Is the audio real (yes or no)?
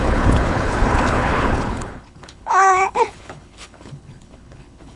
no